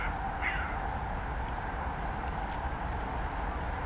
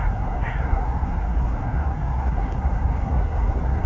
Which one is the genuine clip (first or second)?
first